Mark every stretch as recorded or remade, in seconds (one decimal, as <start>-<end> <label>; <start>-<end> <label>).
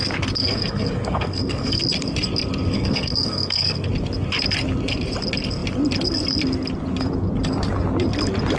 0.0-0.4 recorded; 0.4-1.8 remade; 1.8-2.7 recorded; 2.7-3.9 remade; 3.9-8.6 recorded